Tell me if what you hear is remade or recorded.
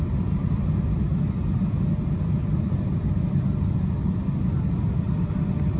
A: recorded